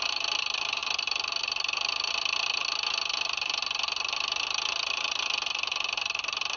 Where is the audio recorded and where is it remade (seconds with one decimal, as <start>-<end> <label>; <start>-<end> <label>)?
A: 0.0-6.6 recorded

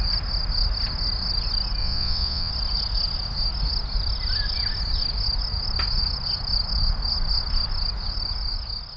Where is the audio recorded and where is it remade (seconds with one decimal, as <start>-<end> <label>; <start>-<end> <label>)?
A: 0.0-1.8 recorded; 1.8-2.5 remade; 2.5-9.0 recorded

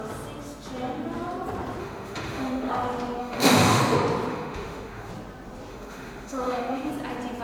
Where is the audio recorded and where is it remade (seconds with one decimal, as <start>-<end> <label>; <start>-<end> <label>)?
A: 0.0-1.8 recorded; 1.8-2.7 remade; 2.7-3.2 recorded; 3.2-3.8 remade; 3.8-4.3 recorded; 4.3-5.1 remade; 5.1-5.7 recorded; 5.7-6.9 remade; 6.9-7.4 recorded

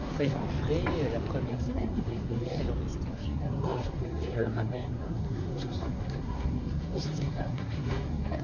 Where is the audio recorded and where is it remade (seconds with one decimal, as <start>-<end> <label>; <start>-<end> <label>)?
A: 0.0-0.4 remade; 0.4-1.5 recorded; 1.5-2.6 remade; 2.6-3.1 recorded; 3.1-8.4 remade

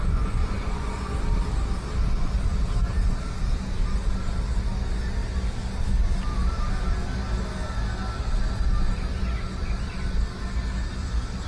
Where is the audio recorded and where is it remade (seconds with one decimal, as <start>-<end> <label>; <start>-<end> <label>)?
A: 0.0-1.2 remade; 1.2-11.5 recorded